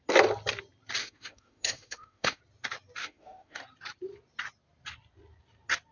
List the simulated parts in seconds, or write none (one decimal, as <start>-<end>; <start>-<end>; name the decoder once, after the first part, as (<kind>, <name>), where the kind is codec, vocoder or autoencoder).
1.0-2.4 (autoencoder, DAC-VAE); 3.0-3.6